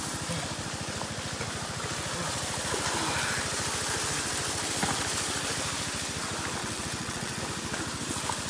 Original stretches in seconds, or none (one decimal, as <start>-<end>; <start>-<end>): 0.0-6.6; 7.4-8.5